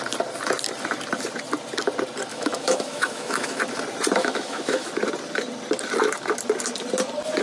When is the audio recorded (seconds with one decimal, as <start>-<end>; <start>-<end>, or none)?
0.0-2.3; 3.6-4.2; 4.9-7.4